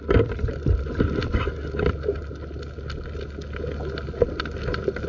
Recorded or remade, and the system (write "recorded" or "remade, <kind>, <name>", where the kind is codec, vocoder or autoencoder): recorded